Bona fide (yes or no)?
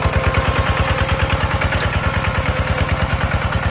yes